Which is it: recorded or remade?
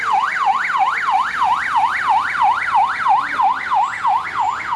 recorded